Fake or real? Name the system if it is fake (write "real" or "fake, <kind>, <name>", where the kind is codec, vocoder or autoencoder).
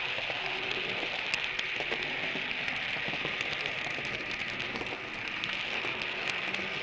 real